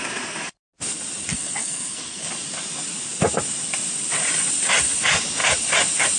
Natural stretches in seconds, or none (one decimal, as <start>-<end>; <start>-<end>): 0.0-1.3; 2.3-6.2